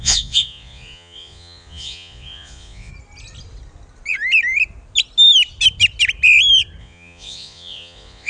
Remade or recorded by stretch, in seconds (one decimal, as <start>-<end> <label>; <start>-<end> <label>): 0.0-2.9 remade; 2.9-6.8 recorded; 6.8-8.3 remade